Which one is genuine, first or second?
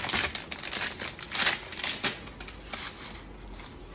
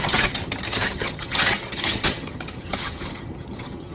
first